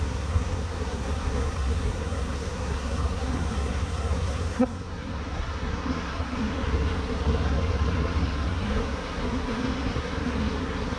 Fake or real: fake